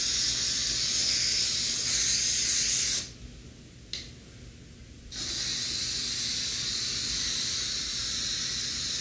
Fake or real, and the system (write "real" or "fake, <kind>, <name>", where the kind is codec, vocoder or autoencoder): real